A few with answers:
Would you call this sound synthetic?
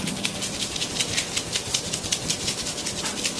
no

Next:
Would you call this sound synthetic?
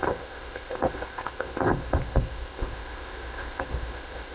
yes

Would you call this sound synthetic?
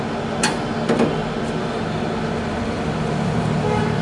no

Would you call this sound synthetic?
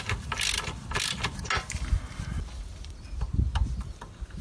no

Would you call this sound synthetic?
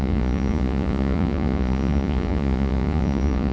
yes